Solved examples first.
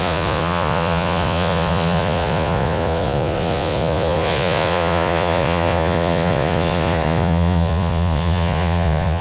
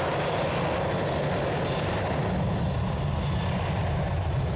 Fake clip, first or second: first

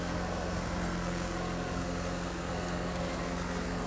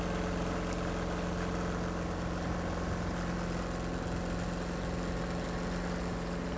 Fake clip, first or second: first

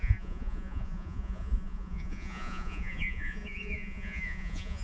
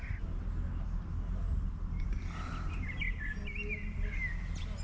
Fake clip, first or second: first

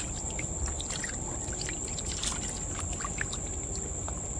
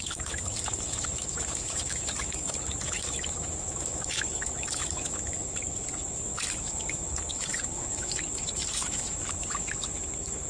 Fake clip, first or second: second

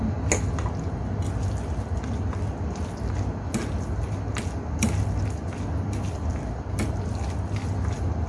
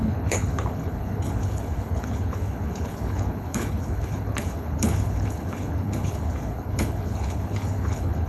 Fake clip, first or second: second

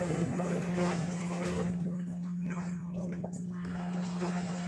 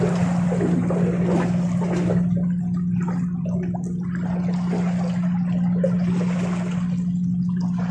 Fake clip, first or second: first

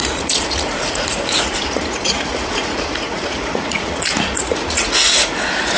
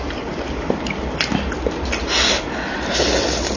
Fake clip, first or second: first